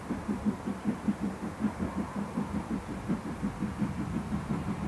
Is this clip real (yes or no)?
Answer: yes